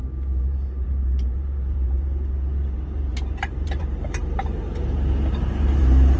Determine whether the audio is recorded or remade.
remade